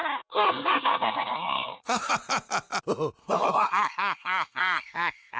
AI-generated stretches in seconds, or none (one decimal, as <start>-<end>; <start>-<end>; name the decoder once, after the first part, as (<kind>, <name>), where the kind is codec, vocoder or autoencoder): 0.0-2.1 (codec, SNAC); 3.2-5.4